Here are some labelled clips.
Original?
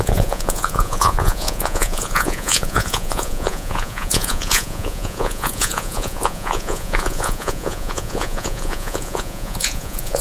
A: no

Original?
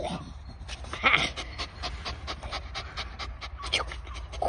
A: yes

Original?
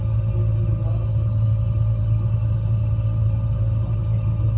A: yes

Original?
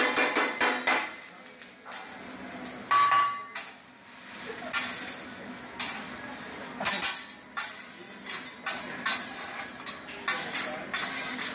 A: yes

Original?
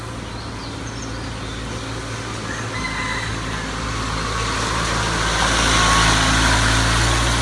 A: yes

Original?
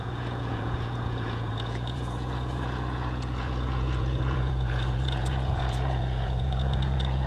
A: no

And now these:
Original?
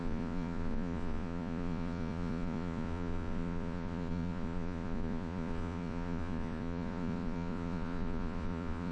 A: no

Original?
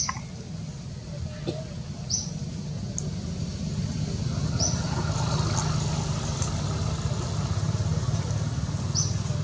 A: yes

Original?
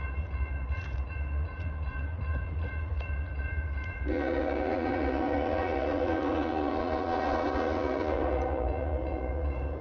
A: no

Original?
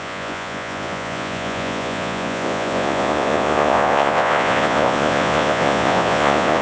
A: no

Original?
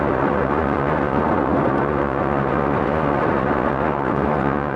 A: no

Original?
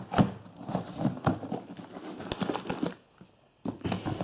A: yes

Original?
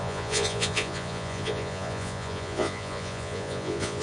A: no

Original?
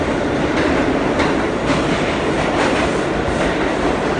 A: yes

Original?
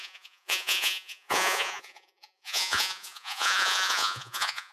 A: no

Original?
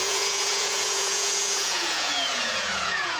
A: no